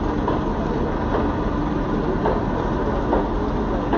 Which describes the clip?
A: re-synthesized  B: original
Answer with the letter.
B